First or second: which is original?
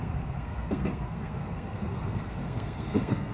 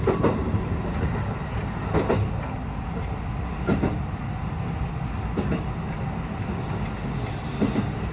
second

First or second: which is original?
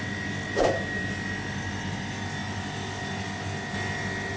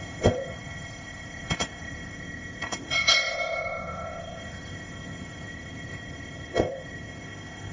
first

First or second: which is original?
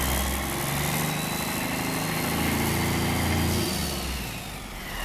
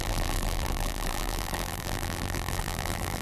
first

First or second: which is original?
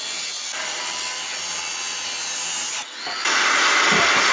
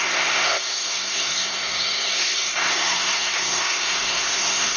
first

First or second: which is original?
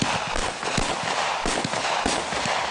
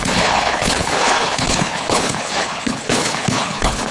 first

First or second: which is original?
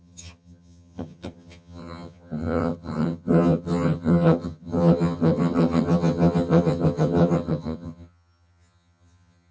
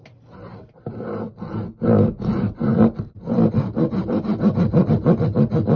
second